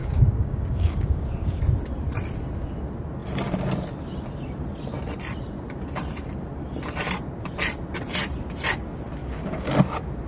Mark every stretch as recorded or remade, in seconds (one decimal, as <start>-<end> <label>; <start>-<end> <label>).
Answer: 0.0-1.6 remade; 1.6-9.2 recorded; 9.2-9.7 remade; 9.7-10.3 recorded